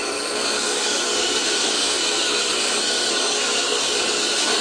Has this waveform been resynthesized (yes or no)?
yes